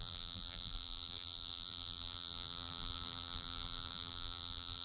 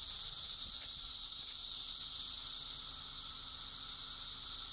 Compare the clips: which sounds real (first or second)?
second